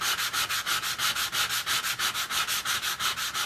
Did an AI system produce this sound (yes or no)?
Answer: no